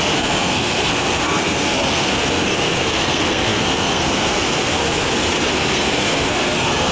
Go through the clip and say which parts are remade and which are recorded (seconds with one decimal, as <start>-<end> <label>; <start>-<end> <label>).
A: 0.0-6.9 remade

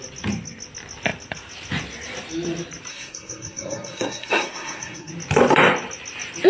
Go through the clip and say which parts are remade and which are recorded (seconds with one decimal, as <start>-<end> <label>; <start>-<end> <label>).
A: 0.0-2.9 recorded; 2.9-5.1 remade; 5.1-6.5 recorded

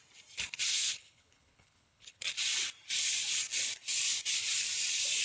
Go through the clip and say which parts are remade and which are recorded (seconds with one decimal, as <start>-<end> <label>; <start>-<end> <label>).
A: 0.0-0.7 recorded; 0.7-2.2 remade; 2.2-5.2 recorded

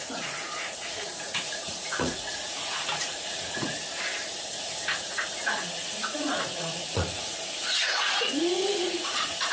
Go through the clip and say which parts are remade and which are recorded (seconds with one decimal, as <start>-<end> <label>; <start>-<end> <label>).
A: 0.0-3.7 remade; 3.7-4.5 recorded; 4.5-9.5 remade

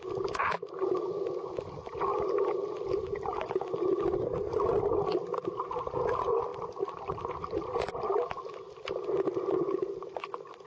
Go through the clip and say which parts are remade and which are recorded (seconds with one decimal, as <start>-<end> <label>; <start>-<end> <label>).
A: 0.0-10.7 recorded

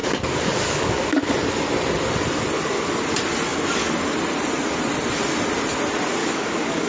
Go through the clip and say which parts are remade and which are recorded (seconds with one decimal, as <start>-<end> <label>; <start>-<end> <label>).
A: 0.0-1.3 remade; 1.3-6.2 recorded; 6.2-6.9 remade

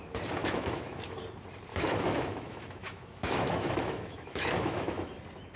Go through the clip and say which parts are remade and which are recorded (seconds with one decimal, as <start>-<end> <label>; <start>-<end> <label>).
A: 0.0-0.4 recorded; 0.4-1.0 remade; 1.0-1.7 recorded; 1.7-5.1 remade; 5.1-5.6 recorded